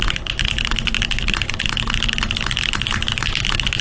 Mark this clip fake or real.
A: real